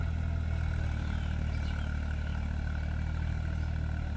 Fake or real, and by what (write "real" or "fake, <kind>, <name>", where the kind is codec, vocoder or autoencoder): real